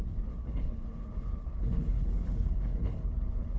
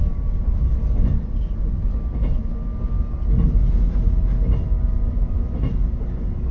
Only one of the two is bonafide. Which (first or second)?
second